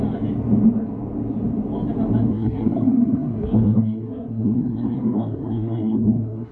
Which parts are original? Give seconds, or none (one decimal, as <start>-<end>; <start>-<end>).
0.0-2.3

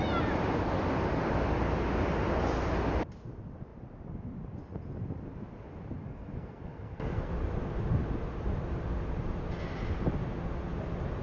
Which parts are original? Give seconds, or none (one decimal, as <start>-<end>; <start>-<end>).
0.0-6.0; 7.3-11.2

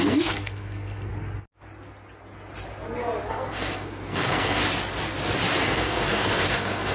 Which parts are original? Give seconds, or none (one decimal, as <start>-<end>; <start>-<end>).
1.1-3.3; 4.6-5.6

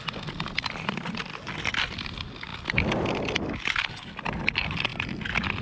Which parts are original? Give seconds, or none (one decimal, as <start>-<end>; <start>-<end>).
0.0-5.6